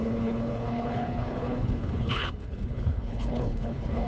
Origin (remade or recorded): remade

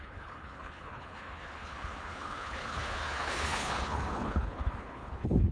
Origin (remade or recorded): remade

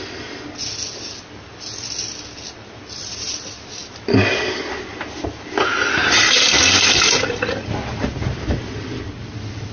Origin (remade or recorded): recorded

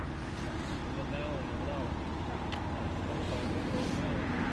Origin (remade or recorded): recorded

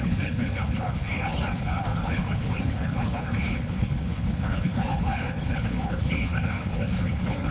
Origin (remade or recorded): remade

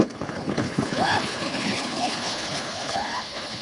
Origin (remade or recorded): remade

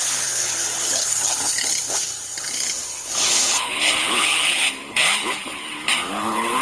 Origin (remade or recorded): remade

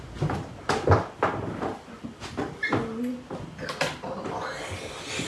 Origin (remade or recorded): recorded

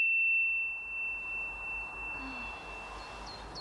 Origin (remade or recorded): recorded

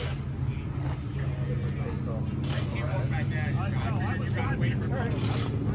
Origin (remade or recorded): recorded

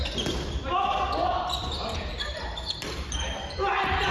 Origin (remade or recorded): recorded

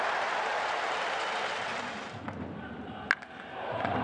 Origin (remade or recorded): recorded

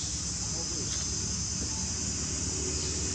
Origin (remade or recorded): recorded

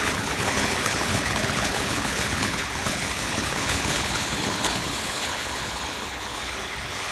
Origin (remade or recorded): remade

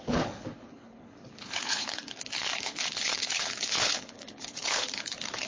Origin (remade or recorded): remade